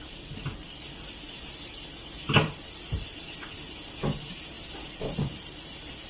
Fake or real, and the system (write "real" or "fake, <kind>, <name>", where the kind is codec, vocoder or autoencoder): real